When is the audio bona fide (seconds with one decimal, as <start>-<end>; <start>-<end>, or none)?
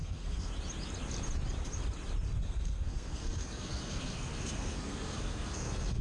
0.5-2.4